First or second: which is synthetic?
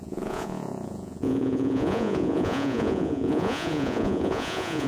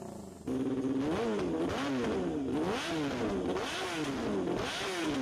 first